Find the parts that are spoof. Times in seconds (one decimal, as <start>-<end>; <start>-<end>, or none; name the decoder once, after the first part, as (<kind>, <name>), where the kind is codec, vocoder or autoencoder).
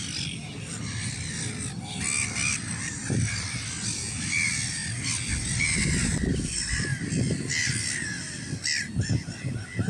none